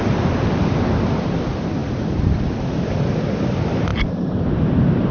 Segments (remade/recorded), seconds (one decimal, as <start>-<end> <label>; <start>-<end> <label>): 0.0-5.1 recorded